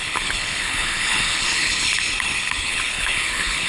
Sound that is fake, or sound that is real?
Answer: fake